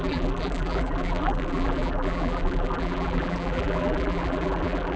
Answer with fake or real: fake